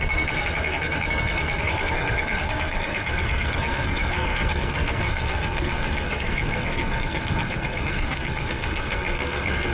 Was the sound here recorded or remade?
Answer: remade